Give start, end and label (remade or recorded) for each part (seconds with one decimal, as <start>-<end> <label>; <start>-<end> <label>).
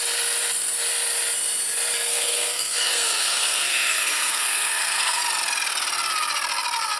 0.0-2.1 recorded; 2.1-5.2 remade; 5.2-7.0 recorded